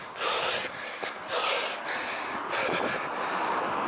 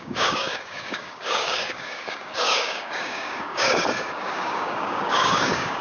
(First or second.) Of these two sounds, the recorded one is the first